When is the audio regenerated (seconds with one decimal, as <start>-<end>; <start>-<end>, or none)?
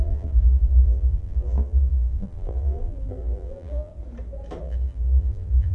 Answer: 0.0-3.9; 4.6-5.7